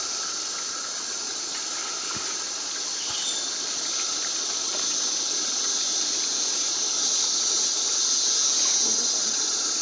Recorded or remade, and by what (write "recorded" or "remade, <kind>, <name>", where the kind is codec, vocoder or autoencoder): recorded